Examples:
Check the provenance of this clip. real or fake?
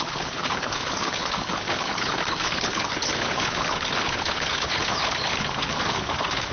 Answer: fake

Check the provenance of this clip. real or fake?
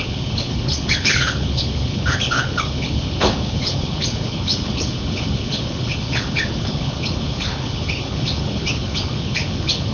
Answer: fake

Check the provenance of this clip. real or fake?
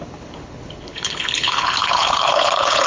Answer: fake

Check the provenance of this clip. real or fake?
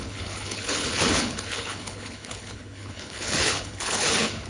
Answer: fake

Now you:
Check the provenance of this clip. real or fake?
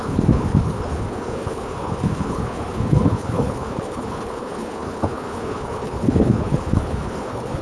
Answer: fake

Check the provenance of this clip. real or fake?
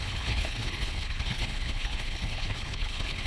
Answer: fake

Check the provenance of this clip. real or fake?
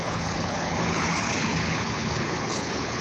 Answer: fake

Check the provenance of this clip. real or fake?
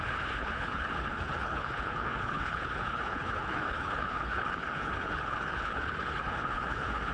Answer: fake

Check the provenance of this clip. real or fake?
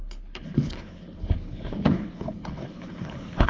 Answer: fake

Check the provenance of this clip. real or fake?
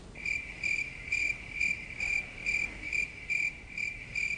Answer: real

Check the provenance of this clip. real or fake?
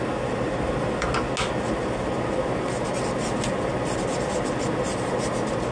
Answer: real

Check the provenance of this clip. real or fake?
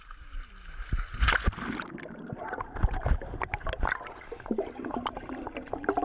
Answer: real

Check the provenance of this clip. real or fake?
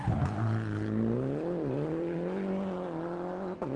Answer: real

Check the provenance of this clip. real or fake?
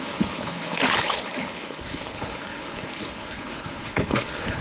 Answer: fake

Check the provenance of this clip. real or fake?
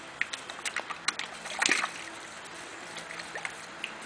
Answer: real